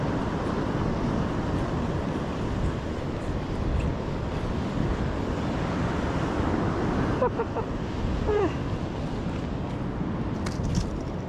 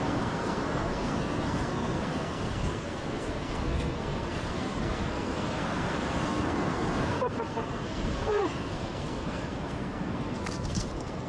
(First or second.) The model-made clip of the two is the second